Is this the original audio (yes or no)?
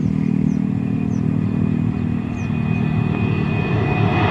yes